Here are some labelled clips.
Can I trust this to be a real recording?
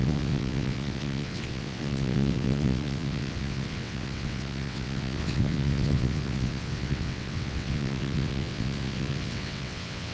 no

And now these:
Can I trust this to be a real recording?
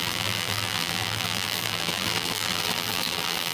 no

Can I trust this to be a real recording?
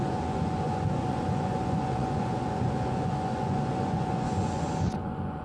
no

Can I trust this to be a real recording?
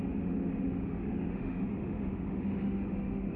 no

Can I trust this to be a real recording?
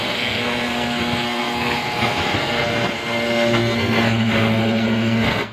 no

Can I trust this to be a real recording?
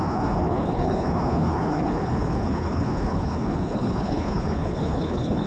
no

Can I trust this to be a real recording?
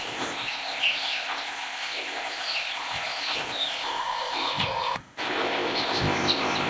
no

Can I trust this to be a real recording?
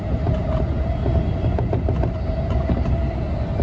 yes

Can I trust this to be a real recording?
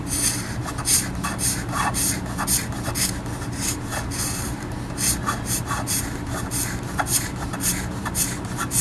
no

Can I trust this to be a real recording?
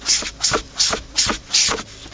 yes